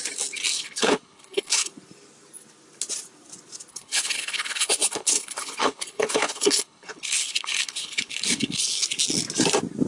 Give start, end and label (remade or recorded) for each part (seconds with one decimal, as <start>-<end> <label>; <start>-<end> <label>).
0.0-0.5 recorded; 0.5-1.7 remade; 1.7-3.7 recorded; 3.7-8.8 remade; 8.8-9.9 recorded